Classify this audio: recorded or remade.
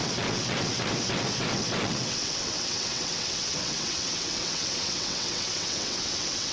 remade